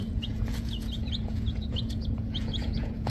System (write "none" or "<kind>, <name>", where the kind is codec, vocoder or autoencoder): vocoder, Vocos